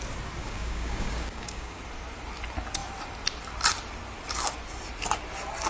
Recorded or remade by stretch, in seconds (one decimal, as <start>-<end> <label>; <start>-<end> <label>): 0.0-0.4 recorded; 0.4-1.8 remade; 1.8-5.7 recorded